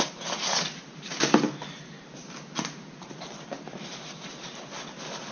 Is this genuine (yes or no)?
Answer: yes